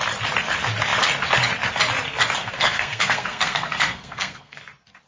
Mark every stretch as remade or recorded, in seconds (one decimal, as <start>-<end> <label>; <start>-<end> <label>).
0.0-2.4 recorded; 2.4-4.6 remade; 4.6-5.1 recorded